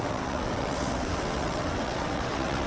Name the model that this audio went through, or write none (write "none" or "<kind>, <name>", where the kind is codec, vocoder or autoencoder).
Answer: vocoder, WaveNeXt